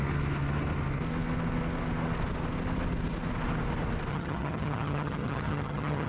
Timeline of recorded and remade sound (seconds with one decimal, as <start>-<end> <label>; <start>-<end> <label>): 0.0-4.1 recorded; 4.1-6.1 remade